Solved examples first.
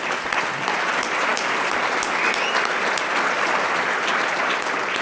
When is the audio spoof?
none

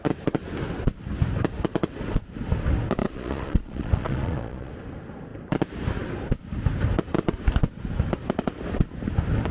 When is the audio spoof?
3.0-4.7 (vocoder, Vocos)

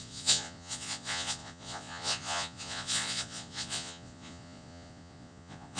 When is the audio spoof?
0.0-5.8 (vocoder, Vocos)